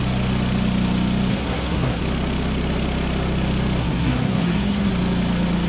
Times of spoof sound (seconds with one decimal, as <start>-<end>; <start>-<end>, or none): 1.3-2.0; 3.8-4.9